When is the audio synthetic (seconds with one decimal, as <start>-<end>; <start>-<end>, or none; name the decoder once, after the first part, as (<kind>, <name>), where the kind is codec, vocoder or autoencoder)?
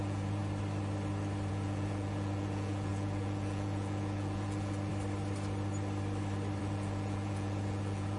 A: 0.0-0.4 (vocoder, Vocos); 1.5-4.9; 6.6-8.2